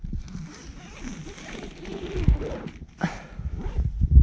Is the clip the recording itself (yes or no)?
yes